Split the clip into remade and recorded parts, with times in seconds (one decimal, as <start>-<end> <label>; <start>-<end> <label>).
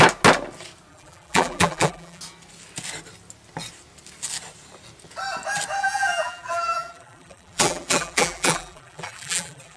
0.0-0.9 recorded; 0.9-2.2 remade; 2.2-5.8 recorded; 5.8-9.8 remade